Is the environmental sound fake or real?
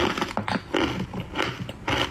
real